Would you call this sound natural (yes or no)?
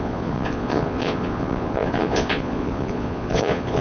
no